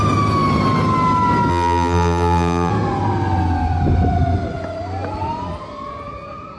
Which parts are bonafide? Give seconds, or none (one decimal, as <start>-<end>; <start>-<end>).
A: 0.0-1.5; 2.7-6.6